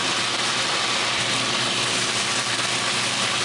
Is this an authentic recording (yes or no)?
yes